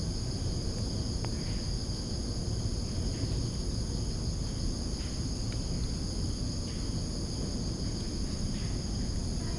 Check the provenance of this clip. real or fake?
real